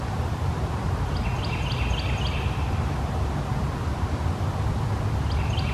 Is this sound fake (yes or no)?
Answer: no